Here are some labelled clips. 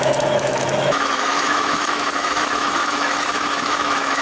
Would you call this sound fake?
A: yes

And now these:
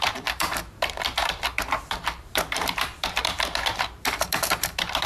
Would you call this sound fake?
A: yes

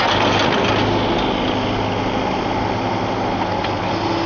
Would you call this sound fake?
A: no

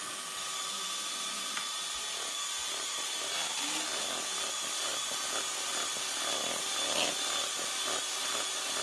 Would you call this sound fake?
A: no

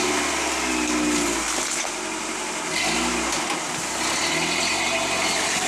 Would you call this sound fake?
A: no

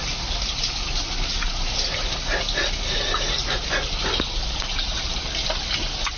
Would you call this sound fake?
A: no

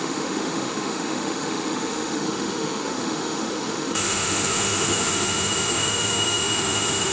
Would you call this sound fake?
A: yes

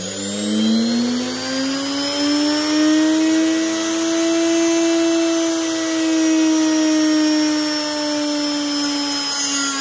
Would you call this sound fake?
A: no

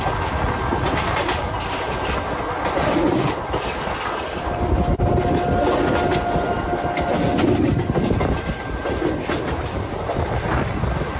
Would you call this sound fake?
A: no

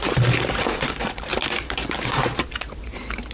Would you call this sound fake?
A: yes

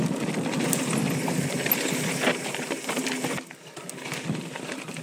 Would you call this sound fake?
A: no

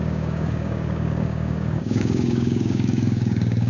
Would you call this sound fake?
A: yes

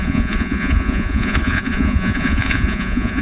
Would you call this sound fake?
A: yes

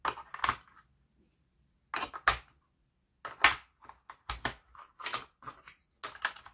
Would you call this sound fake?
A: no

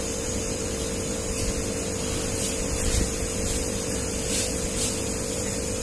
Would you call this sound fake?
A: no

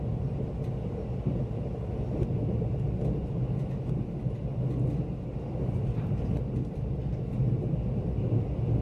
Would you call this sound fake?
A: no